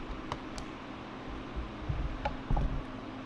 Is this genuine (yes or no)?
yes